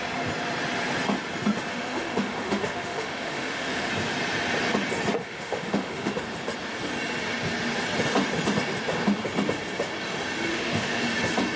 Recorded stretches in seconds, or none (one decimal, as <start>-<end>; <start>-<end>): 0.0-1.7; 3.9-5.2; 6.2-10.5; 11.0-11.6